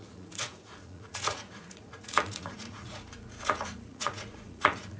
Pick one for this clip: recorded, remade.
remade